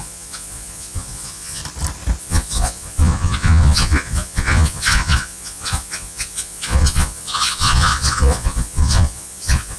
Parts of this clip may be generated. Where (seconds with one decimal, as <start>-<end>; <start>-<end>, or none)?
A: 0.0-1.6; 2.2-9.8